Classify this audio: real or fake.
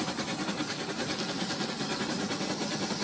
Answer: real